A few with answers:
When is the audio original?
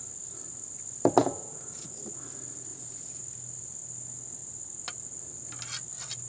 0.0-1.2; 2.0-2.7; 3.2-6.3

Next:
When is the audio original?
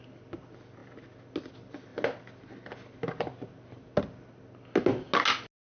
0.0-5.7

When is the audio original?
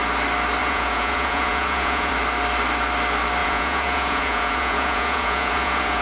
0.0-0.6; 2.1-3.4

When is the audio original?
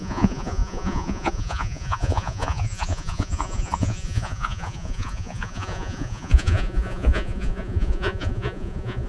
none